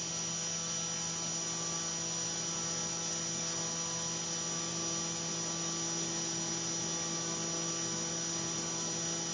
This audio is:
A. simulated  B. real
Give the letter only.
B